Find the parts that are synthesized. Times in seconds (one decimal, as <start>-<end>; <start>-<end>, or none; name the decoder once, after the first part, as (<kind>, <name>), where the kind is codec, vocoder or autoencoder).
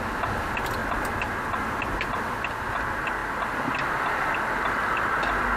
none